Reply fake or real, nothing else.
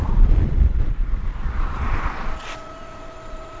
fake